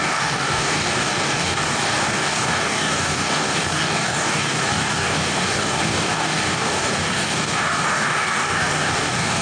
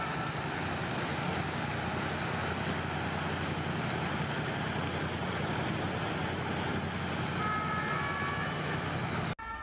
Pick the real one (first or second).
second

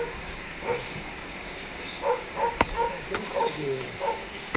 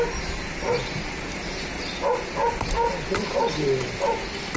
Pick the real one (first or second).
second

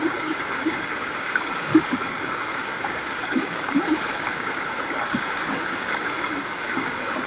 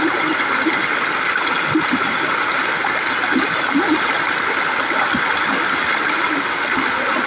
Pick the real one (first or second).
second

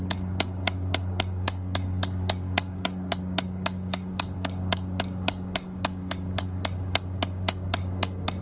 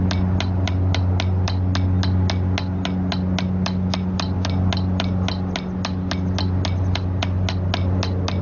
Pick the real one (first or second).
second